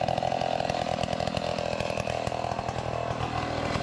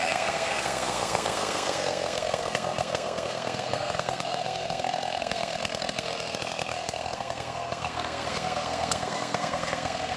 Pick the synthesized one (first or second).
second